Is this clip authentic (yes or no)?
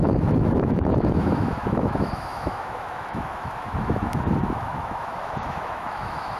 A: no